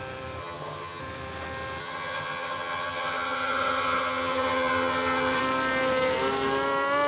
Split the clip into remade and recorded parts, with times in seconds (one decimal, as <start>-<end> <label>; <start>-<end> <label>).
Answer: 0.0-0.4 recorded; 0.4-1.0 remade; 1.0-1.8 recorded; 1.8-5.4 remade; 5.4-7.1 recorded